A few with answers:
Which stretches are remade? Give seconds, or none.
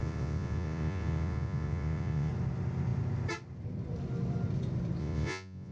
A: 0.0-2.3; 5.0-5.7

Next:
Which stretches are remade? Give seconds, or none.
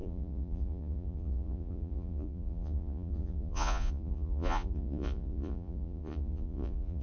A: 0.0-7.0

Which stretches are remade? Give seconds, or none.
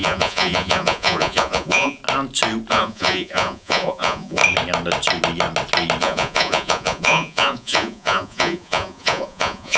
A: 0.0-2.0; 2.7-4.4; 6.0-9.8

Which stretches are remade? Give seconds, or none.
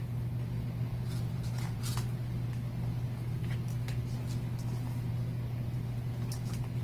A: 0.9-1.8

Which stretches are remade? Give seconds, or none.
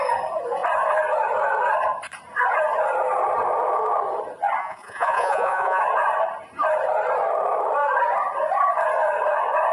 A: 4.6-5.8